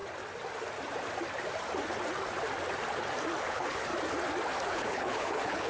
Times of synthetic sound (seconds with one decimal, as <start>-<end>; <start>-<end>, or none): 3.4-3.9; 4.7-5.7